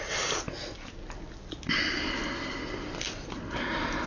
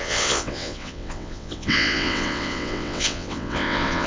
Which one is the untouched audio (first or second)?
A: first